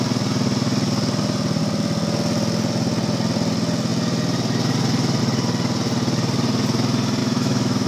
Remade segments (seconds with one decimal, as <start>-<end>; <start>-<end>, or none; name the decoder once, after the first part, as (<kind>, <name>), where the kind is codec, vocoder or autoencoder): 7.2-7.9 (autoencoder, DAC-VAE)